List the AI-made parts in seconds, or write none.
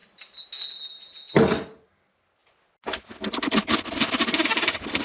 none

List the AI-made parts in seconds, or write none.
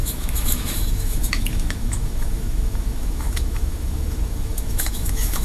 0.0-5.4 (autoencoder, DAC-VAE)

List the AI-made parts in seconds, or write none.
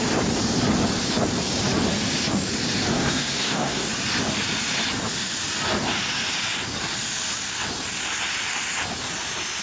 2.9-3.9 (codec, SNAC)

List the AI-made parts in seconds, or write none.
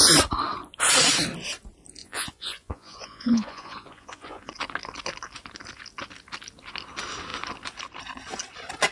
2.0-4.5 (vocoder, Vocos)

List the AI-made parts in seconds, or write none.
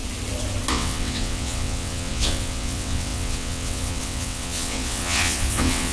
0.7-5.9 (vocoder, WaveNeXt)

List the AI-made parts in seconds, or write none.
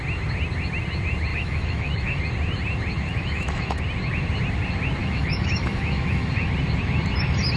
1.3-2.2 (autoencoder, DAC-VAE); 3.1-3.8; 5.0-6.5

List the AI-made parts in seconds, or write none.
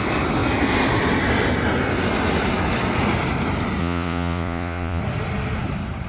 3.8-5.0 (vocoder, Vocos)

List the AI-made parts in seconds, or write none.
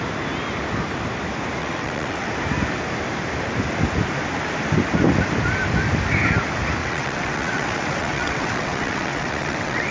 1.6-2.3 (vocoder, WaveNeXt); 6.8-9.9